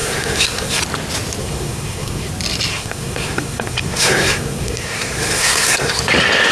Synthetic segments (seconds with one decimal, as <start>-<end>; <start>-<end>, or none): 0.0-0.8; 1.4-2.3; 2.7-6.0

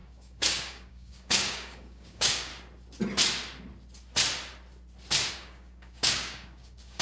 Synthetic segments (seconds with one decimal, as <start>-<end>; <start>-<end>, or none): 0.0-2.5; 5.3-7.0

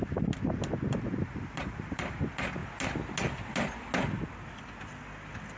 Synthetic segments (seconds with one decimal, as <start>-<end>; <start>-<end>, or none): none